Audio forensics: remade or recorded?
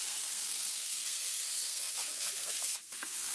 remade